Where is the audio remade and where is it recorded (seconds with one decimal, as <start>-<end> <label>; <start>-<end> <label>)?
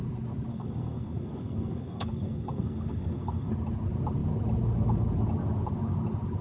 0.0-0.5 recorded; 0.5-3.5 remade; 3.5-6.4 recorded